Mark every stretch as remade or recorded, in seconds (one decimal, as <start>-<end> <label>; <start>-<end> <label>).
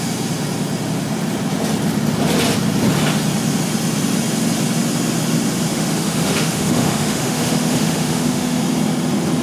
0.0-5.7 recorded; 5.7-8.6 remade; 8.6-9.4 recorded